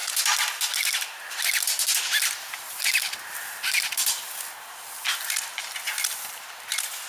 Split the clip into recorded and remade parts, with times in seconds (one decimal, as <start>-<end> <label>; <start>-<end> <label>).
0.0-4.3 remade; 4.3-5.1 recorded; 5.1-6.4 remade; 6.4-7.1 recorded